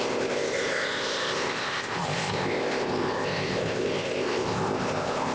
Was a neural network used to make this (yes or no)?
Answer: yes